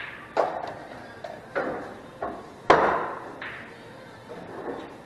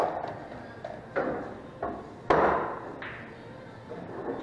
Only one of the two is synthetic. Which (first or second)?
first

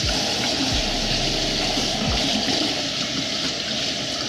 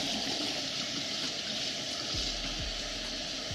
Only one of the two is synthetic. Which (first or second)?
second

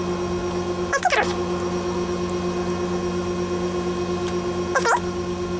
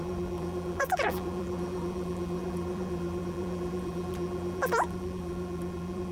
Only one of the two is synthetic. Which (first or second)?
second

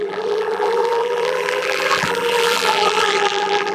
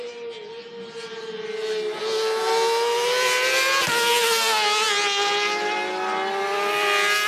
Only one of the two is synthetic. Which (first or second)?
first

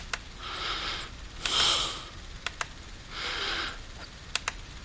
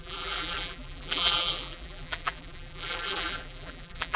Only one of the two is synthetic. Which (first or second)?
second